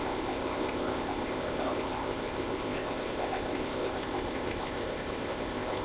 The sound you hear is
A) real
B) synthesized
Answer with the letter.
B